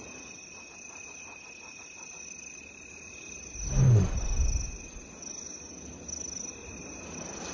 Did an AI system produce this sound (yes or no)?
no